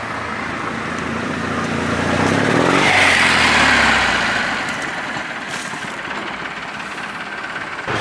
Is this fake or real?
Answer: real